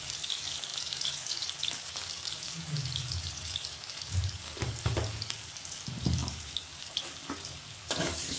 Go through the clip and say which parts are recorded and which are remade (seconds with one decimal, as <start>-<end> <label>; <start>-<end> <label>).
0.0-8.4 remade